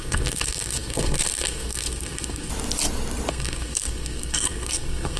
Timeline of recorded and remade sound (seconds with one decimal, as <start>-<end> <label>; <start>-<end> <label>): 0.0-2.5 remade; 2.5-3.3 recorded; 3.3-5.2 remade